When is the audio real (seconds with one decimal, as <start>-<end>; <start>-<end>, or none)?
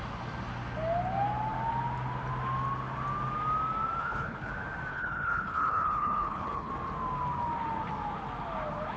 0.0-4.0; 4.5-4.9; 6.7-9.0